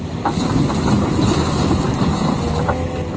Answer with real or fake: real